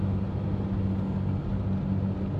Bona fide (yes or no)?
yes